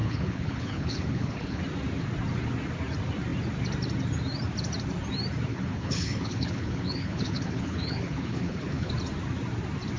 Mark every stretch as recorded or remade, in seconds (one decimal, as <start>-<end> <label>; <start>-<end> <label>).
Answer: 0.0-1.6 remade; 1.6-5.5 recorded; 5.5-8.9 remade; 8.9-10.0 recorded